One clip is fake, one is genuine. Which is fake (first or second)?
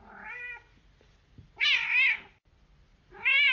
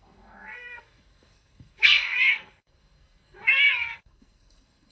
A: second